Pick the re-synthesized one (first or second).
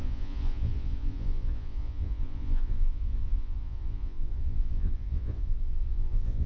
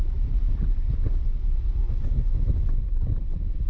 first